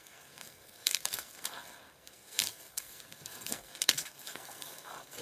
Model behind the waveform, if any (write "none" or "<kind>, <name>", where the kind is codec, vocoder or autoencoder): codec, SNAC